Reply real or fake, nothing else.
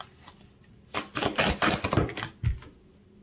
real